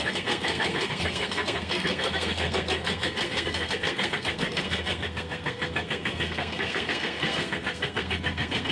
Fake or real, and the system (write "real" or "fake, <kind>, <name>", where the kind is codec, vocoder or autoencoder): fake, codec, SNAC